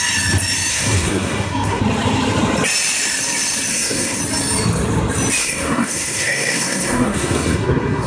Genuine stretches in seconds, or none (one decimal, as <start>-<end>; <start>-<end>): 0.0-0.7; 1.8-3.7; 4.2-5.4